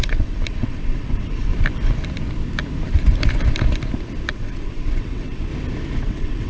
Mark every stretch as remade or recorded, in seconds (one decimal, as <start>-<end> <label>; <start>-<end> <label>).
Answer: 0.0-1.5 remade; 1.5-4.3 recorded; 4.3-5.5 remade; 5.5-6.0 recorded; 6.0-6.5 remade